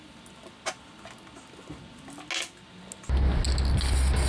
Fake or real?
real